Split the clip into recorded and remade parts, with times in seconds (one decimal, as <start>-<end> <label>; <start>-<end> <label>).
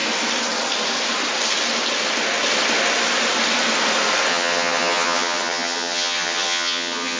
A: 0.0-4.3 recorded; 4.3-7.2 remade